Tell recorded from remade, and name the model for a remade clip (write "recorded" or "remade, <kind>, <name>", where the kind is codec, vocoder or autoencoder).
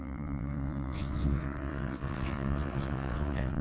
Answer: remade, vocoder, WaveNeXt